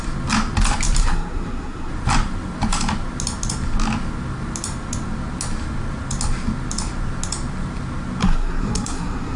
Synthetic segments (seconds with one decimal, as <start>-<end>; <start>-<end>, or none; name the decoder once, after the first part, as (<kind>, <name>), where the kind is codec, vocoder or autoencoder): 1.0-1.9 (codec, SNAC); 8.2-9.4